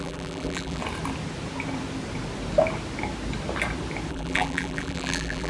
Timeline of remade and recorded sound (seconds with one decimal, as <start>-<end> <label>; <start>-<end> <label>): 0.0-0.8 remade; 0.8-4.1 recorded; 4.1-5.5 remade